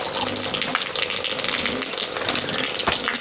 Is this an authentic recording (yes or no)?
yes